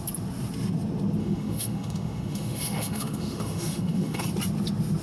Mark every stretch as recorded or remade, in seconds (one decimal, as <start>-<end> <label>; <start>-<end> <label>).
0.0-1.2 recorded; 1.2-4.2 remade; 4.2-5.0 recorded